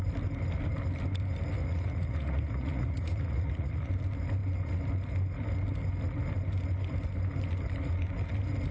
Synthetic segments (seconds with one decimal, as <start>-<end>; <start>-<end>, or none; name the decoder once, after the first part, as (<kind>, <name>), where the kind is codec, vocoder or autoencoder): 1.6-3.9 (vocoder, Vocos)